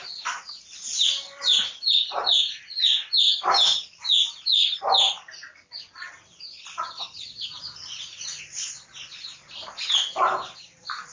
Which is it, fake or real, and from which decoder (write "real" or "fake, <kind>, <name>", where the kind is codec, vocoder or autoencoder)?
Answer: real